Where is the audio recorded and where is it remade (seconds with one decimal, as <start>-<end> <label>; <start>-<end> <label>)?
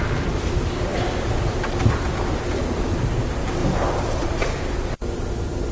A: 0.0-5.7 recorded